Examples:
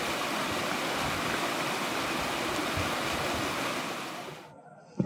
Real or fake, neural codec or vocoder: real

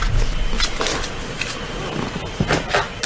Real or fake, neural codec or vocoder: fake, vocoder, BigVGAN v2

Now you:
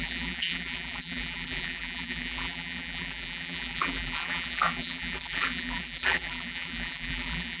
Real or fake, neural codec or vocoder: fake, vocoder, BigVGAN v2